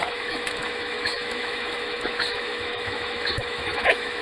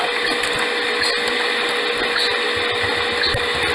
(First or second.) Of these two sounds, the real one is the second